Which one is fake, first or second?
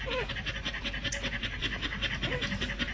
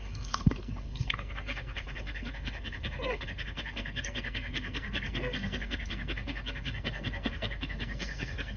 second